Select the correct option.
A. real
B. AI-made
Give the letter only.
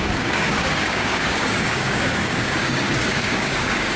B